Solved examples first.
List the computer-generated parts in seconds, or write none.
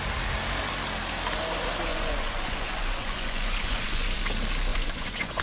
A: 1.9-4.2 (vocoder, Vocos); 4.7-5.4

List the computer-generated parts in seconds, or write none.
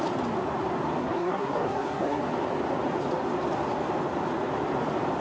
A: 1.0-2.2 (codec, SNAC)